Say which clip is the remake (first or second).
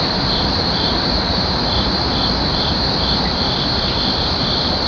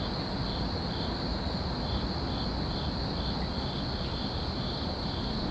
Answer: first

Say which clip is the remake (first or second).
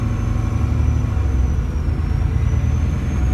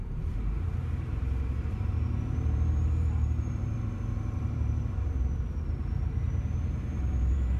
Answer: second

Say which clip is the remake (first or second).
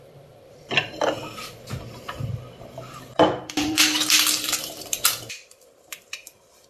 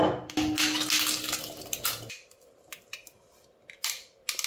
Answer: first